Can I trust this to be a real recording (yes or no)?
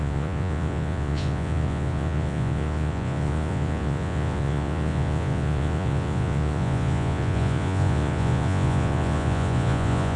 no